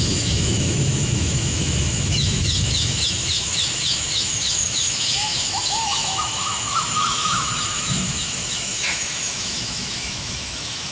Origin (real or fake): fake